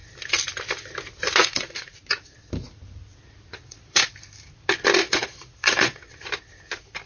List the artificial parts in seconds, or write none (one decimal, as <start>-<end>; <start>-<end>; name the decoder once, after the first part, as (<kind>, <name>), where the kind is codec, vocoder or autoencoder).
1.4-1.9 (vocoder, Vocos); 3.5-4.1; 5.0-6.1